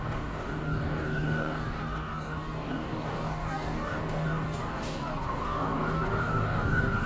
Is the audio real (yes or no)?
no